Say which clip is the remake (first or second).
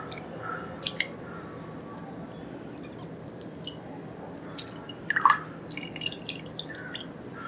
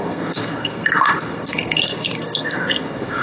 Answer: second